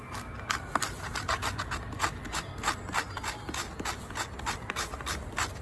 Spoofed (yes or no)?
no